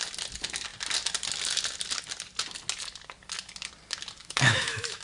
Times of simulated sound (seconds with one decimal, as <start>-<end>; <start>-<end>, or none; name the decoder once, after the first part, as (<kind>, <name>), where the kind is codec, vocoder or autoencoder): 4.2-5.0 (autoencoder, DAC-VAE)